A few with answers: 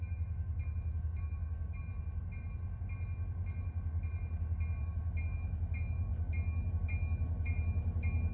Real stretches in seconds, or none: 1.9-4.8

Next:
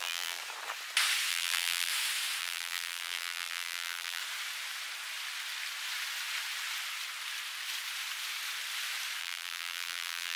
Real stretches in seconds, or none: 0.4-1.3; 1.9-2.4; 4.2-9.2

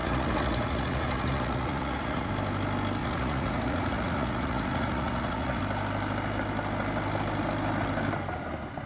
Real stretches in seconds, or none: 2.3-3.0; 5.6-8.9